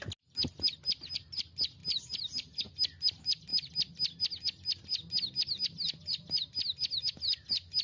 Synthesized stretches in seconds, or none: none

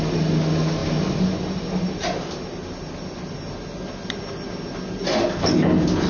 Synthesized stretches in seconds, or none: none

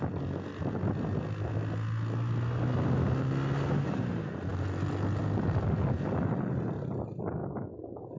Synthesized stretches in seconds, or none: 7.4-8.2 (autoencoder, DAC-VAE)

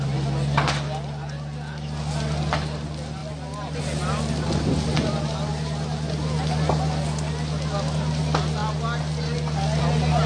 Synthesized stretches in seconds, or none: none

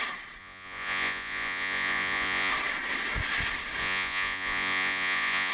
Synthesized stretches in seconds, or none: 0.4-2.5 (vocoder, Vocos); 3.8-5.5